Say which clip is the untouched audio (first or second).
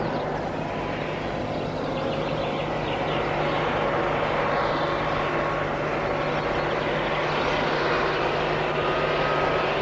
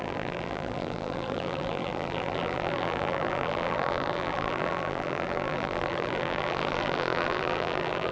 first